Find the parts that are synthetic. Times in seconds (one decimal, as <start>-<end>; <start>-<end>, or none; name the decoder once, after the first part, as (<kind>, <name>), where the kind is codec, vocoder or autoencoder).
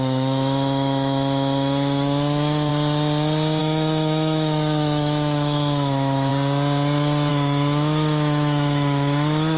0.0-2.7 (autoencoder, DAC-VAE); 3.6-6.3; 7.3-9.6